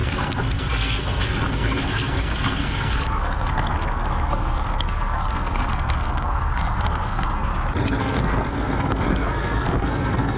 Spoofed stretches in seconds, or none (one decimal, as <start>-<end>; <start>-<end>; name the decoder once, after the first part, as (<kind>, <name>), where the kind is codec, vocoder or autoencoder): 0.0-7.5 (codec, SNAC); 8.0-10.4